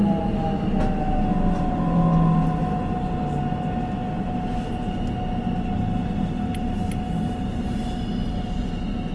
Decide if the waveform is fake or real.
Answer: real